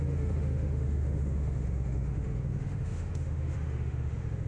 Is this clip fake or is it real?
fake